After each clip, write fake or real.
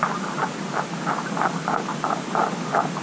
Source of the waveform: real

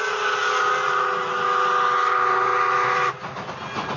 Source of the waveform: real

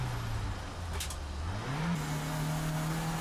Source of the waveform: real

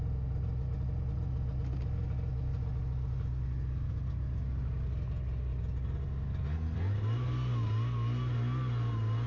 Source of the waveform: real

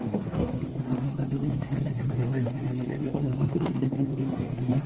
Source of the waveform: fake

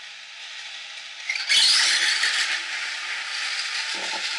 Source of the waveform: real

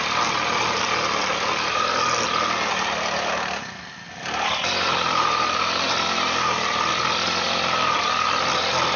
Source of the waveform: real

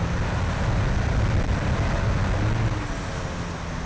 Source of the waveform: real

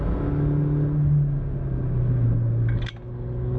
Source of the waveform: real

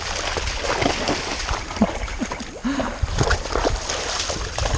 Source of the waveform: real